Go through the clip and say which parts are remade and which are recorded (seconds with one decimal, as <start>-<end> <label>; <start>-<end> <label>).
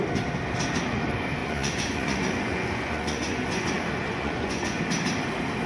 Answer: 0.0-1.4 recorded; 1.4-4.8 remade; 4.8-5.7 recorded